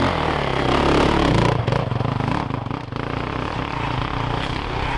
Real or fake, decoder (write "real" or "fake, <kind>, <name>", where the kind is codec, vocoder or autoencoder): real